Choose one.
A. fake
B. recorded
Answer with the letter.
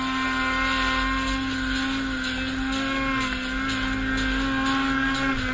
B